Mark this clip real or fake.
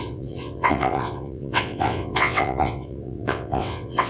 fake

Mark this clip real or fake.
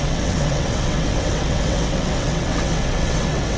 fake